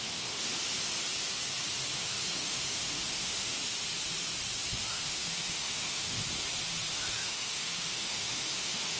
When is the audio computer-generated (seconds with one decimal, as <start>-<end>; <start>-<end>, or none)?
0.0-0.5; 1.9-3.6; 4.9-6.2; 6.9-9.0